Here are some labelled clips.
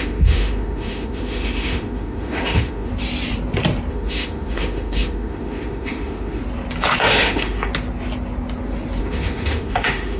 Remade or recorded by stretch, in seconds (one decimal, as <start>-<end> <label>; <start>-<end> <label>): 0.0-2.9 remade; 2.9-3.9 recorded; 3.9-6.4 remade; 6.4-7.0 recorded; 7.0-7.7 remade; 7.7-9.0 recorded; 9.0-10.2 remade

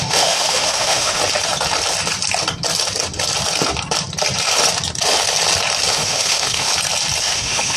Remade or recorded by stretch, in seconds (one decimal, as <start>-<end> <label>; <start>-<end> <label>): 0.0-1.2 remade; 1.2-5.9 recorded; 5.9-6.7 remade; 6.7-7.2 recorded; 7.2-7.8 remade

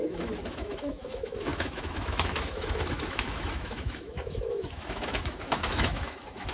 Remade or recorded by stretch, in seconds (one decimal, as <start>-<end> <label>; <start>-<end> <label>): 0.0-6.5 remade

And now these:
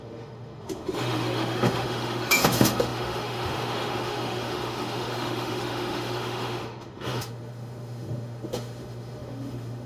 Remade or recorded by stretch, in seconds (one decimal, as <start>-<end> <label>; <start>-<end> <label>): 0.0-9.9 remade

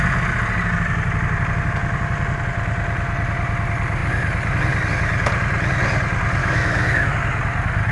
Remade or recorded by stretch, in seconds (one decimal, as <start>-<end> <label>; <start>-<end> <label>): 0.0-6.4 recorded; 6.4-7.1 remade; 7.1-7.9 recorded